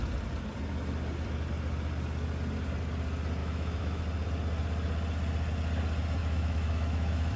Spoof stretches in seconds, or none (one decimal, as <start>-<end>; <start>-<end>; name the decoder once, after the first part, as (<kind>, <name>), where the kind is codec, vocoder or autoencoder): 3.4-4.0 (autoencoder, DAC-VAE); 6.2-7.4